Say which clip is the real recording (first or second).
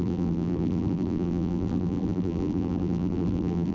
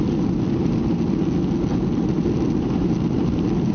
second